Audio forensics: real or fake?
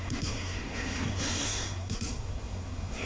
fake